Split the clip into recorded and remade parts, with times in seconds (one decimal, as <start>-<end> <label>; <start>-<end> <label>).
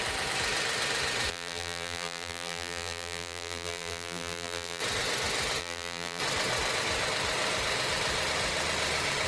0.0-1.3 recorded; 1.3-4.8 remade; 4.8-5.6 recorded; 5.6-6.2 remade; 6.2-9.3 recorded